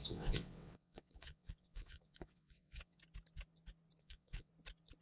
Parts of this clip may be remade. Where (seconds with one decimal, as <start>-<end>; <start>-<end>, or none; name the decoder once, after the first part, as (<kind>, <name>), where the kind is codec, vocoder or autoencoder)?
0.0-3.0 (vocoder, WaveNeXt); 4.0-4.5